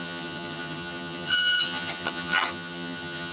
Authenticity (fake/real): fake